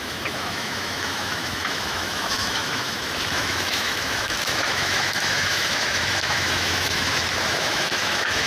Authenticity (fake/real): fake